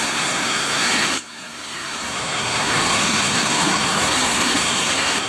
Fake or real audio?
fake